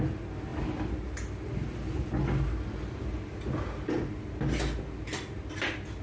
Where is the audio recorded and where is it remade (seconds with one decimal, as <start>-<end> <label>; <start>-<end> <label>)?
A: 0.0-6.0 recorded